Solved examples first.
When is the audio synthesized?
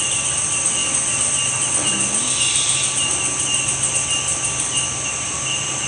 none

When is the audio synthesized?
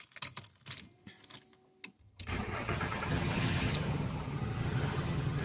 2.0-5.4 (vocoder, HiFi-GAN)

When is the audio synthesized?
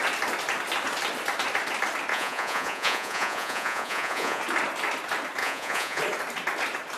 2.1-4.4 (vocoder, Vocos); 5.4-6.0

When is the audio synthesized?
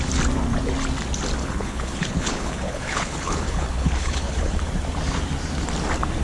1.4-4.7 (codec, HILCodec)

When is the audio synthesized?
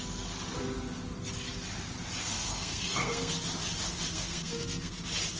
2.2-3.3 (codec, SNAC); 4.1-4.9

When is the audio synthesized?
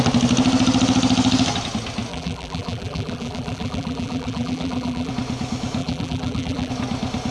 2.1-5.1 (vocoder, BigVGAN v2); 5.8-6.7